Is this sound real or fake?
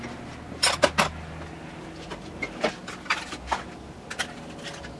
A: real